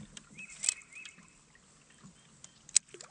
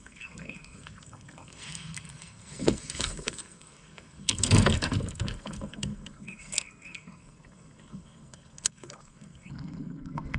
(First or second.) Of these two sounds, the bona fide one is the first